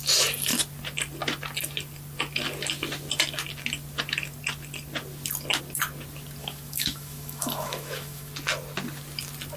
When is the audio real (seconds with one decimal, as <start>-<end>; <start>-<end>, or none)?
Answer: 0.0-6.4; 8.3-9.6